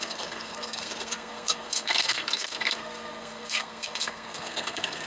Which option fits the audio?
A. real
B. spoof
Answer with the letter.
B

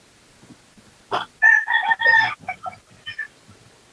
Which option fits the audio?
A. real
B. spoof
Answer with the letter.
A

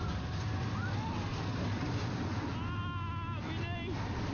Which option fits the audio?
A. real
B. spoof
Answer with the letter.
A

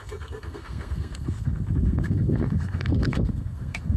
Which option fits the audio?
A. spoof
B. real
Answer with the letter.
A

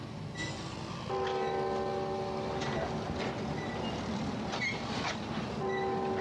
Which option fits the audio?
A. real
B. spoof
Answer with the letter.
A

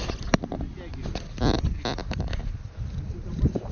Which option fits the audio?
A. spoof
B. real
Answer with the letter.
B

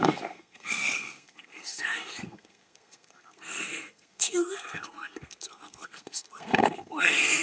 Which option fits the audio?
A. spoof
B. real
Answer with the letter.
A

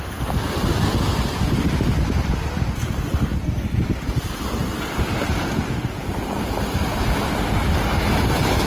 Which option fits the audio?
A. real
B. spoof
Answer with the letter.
A